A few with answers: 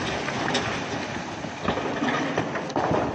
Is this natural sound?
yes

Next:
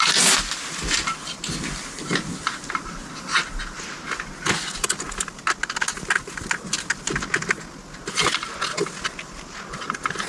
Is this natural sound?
yes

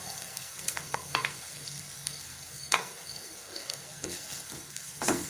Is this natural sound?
no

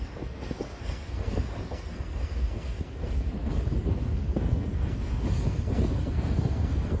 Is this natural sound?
no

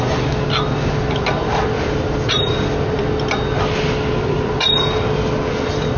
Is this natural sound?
yes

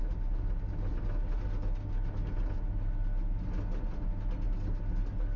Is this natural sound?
yes